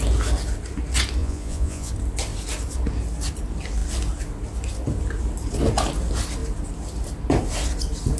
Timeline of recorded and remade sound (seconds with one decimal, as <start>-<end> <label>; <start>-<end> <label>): 0.0-1.2 recorded; 1.2-1.9 remade; 1.9-8.2 recorded